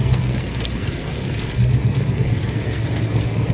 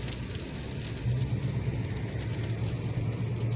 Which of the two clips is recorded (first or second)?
second